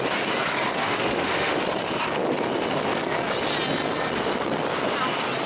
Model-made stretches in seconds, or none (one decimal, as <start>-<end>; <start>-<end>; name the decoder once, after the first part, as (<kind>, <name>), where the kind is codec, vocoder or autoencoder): 0.8-1.6 (autoencoder, DAC-VAE)